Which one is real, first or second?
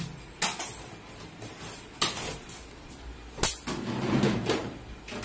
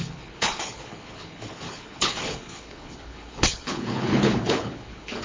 first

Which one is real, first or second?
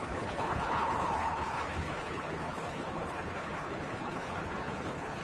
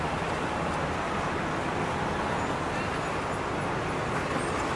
second